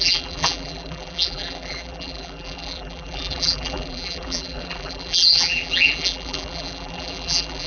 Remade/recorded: remade